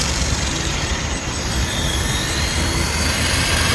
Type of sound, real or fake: fake